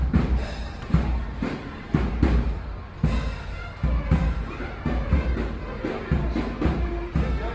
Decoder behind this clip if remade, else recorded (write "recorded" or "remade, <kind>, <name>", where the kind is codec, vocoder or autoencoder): remade, vocoder, BigVGAN v2